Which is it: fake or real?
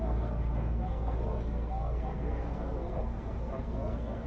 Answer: fake